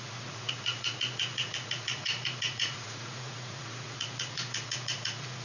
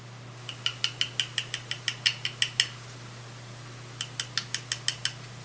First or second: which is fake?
first